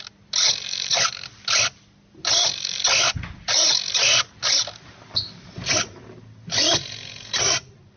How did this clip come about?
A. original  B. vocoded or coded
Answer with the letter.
A